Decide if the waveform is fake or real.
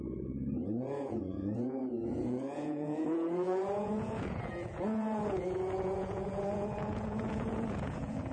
fake